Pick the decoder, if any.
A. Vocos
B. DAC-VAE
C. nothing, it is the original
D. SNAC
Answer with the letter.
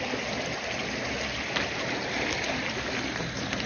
C